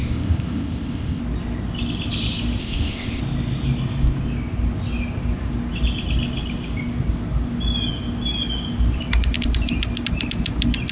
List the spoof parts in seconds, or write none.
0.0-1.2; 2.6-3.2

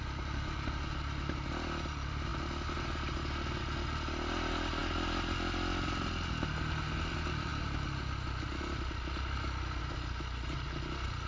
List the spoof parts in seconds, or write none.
none